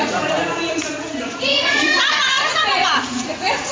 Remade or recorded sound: remade